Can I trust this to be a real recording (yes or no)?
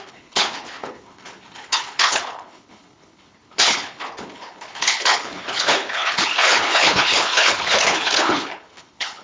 no